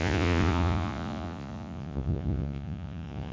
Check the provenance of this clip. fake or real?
fake